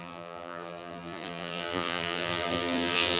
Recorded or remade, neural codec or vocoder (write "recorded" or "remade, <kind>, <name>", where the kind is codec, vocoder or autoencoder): remade, vocoder, BigVGAN v2